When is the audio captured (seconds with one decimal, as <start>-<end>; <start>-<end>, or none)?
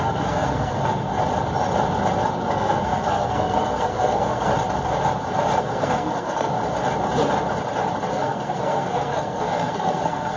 1.1-2.5; 4.5-5.6; 6.5-8.1